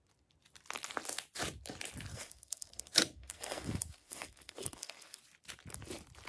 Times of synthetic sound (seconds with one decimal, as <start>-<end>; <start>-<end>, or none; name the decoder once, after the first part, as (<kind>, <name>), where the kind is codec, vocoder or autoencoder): 2.1-5.2 (codec, SNAC)